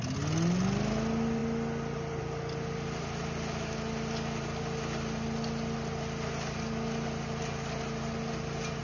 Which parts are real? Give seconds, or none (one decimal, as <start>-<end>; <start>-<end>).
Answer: 0.0-8.8